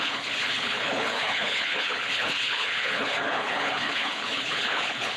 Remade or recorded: remade